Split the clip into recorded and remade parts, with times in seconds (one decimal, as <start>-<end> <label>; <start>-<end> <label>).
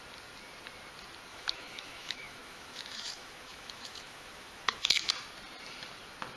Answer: 0.0-1.3 recorded; 1.3-5.1 remade; 5.1-6.4 recorded